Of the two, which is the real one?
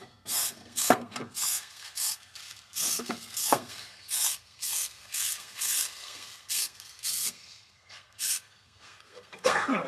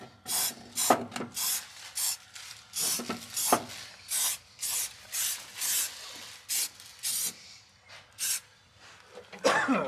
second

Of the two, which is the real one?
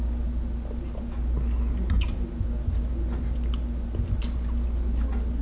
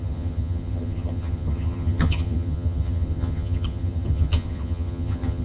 first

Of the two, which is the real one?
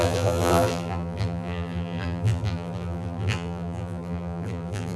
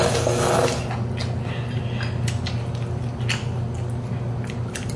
second